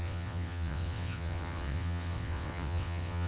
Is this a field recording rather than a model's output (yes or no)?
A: no